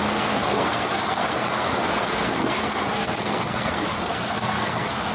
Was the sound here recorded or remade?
remade